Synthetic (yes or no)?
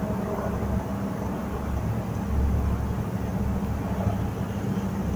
no